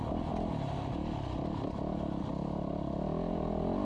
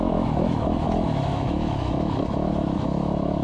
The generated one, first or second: second